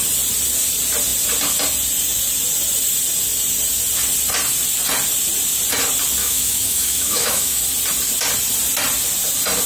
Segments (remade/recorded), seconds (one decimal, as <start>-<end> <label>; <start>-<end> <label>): 0.0-6.2 recorded; 6.2-7.6 remade; 7.6-9.7 recorded

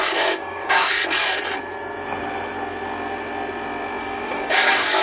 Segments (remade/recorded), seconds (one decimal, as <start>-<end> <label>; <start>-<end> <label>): 0.0-1.0 remade; 1.0-4.0 recorded; 4.0-5.0 remade

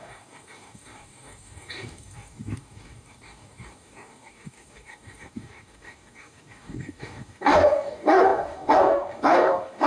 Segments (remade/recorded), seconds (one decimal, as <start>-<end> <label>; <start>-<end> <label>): 0.0-9.9 remade